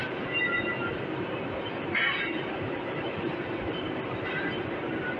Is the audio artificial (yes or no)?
yes